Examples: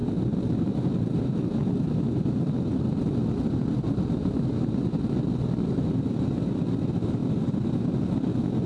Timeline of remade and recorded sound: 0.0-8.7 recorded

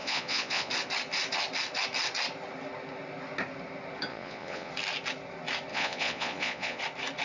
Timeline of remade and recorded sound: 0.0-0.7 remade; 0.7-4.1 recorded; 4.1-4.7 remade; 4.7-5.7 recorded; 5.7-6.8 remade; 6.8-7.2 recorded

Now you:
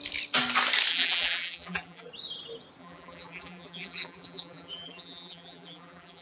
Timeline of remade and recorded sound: 0.0-0.9 recorded; 0.9-2.1 remade; 2.1-2.8 recorded; 2.8-6.2 remade

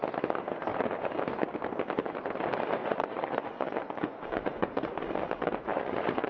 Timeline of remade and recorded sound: 0.0-2.8 recorded; 2.8-6.3 remade

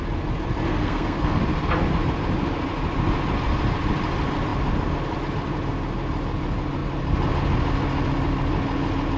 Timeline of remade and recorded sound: 0.0-0.7 recorded; 0.7-1.4 remade; 1.4-9.2 recorded

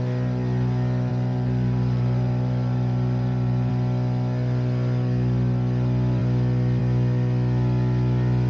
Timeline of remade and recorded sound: 0.0-1.1 recorded; 1.1-3.7 remade; 3.7-8.5 recorded